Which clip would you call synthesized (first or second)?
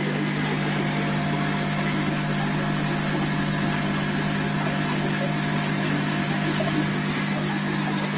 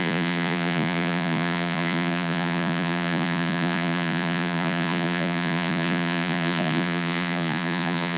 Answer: second